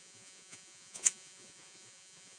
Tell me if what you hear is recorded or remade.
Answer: remade